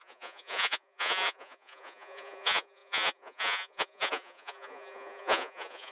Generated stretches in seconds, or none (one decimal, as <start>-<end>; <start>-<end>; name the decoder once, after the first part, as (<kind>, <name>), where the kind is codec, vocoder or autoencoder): 0.0-5.9 (vocoder, Vocos)